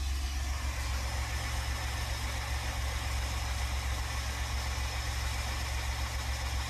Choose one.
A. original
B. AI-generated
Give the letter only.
A